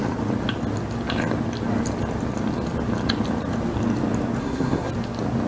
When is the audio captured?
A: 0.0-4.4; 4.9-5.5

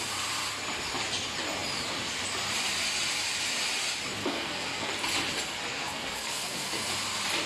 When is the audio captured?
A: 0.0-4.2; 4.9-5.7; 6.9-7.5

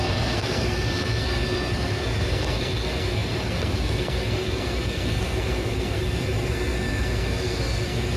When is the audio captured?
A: none

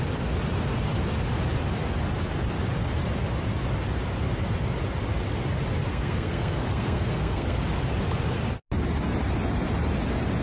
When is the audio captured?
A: 0.0-5.9; 7.6-10.4